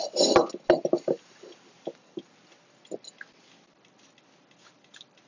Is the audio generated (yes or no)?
no